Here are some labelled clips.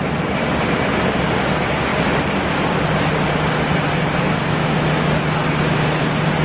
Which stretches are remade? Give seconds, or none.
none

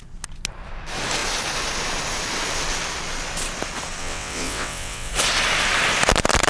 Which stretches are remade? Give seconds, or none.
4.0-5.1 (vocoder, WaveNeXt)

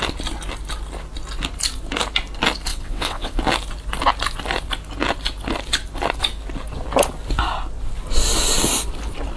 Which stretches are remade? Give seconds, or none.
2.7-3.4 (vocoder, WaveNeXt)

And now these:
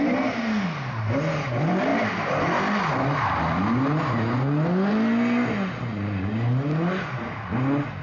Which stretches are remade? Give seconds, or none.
none

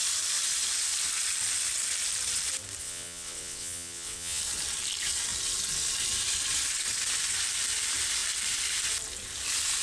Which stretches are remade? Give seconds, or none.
2.8-4.4 (vocoder, WaveNeXt)

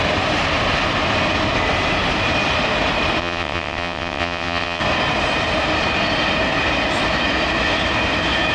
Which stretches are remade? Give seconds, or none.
3.2-4.8 (vocoder, WaveNeXt)

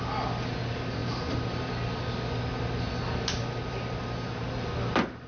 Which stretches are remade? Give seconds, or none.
none